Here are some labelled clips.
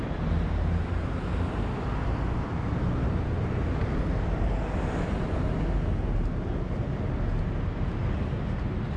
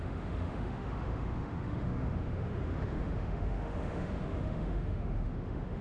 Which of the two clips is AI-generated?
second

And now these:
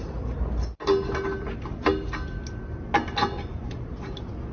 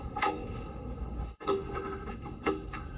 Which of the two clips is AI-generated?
second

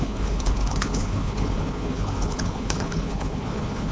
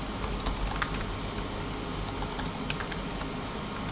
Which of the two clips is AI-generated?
first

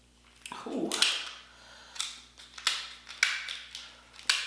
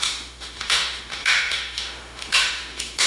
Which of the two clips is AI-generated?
second